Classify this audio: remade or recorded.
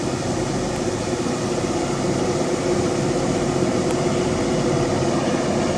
recorded